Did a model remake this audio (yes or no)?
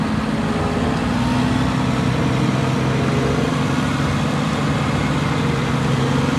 no